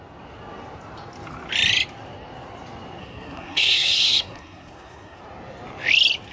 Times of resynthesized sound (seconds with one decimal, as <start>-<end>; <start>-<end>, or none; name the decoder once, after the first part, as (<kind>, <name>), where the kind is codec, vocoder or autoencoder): 3.0-5.2 (codec, SNAC)